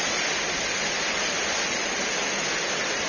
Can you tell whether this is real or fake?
real